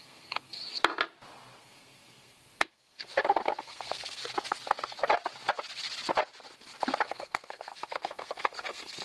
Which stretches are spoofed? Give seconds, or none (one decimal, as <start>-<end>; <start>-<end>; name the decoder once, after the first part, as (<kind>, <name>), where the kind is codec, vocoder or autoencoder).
0.0-0.6 (codec, SNAC); 1.6-3.1; 3.6-4.2; 7.1-9.0